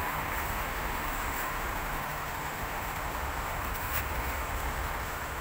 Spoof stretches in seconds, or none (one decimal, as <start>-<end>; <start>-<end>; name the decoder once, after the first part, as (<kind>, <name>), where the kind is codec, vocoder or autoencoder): 0.0-5.4 (autoencoder, DAC-VAE)